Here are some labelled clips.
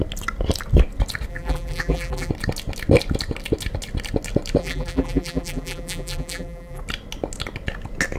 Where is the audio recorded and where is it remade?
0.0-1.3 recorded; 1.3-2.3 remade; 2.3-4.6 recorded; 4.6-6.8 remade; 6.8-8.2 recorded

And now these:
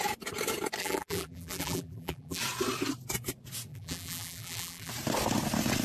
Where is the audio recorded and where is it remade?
0.0-0.8 recorded; 0.8-2.4 remade; 2.4-3.7 recorded; 3.7-4.9 remade; 4.9-5.8 recorded

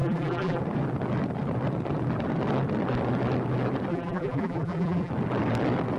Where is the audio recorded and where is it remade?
0.0-0.6 remade; 0.6-3.9 recorded; 3.9-5.1 remade; 5.1-6.0 recorded

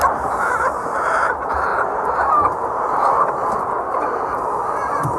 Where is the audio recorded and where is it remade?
0.0-1.7 remade; 1.7-3.7 recorded; 3.7-5.2 remade

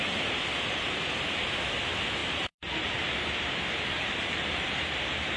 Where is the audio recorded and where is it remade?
0.0-2.2 recorded; 2.2-5.4 remade

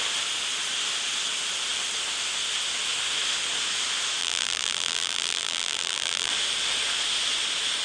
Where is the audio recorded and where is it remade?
0.0-4.2 recorded; 4.2-6.3 remade; 6.3-7.8 recorded